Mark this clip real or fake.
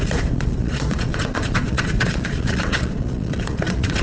fake